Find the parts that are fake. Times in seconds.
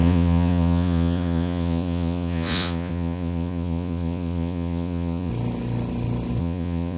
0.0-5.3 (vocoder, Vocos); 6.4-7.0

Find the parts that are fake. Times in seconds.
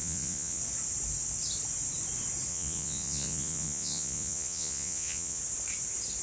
0.0-0.6 (vocoder, Vocos); 2.5-5.4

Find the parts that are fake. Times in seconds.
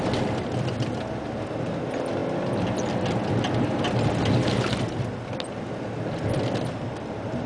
none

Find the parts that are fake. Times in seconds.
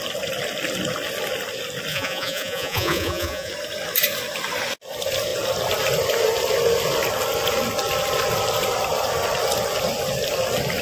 1.9-3.5 (vocoder, Vocos)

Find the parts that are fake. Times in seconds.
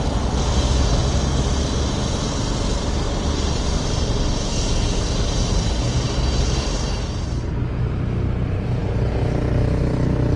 none